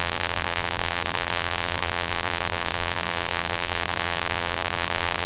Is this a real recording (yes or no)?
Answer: no